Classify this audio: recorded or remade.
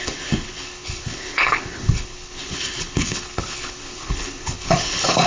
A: remade